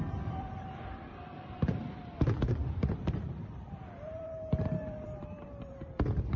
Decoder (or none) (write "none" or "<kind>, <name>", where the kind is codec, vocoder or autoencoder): vocoder, BigVGAN v2